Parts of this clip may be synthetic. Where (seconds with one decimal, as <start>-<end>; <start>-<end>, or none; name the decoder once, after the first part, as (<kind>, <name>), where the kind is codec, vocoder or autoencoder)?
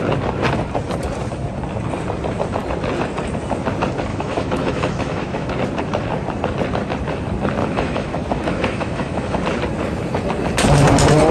4.1-5.5 (autoencoder, DAC-VAE); 7.6-9.4